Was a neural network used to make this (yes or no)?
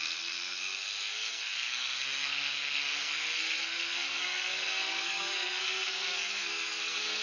yes